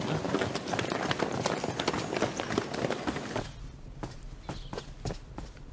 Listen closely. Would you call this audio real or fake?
real